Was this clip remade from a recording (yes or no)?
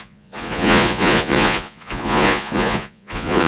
yes